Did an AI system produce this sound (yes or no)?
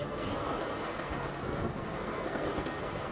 yes